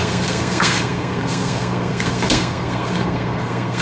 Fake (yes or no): yes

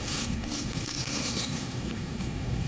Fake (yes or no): yes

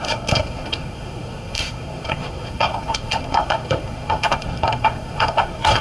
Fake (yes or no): yes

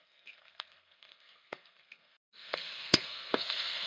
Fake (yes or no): yes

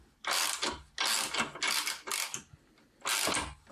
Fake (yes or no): no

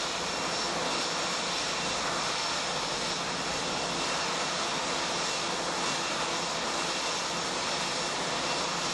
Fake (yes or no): no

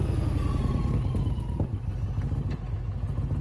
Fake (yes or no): no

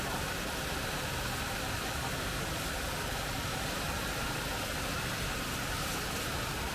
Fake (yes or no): no